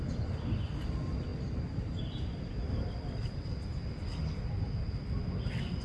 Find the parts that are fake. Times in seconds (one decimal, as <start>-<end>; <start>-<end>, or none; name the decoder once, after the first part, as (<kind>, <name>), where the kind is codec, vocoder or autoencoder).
none